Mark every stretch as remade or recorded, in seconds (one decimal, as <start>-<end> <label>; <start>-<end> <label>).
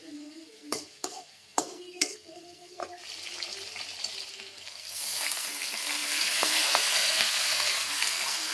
0.0-2.8 remade; 2.8-4.3 recorded; 4.3-8.5 remade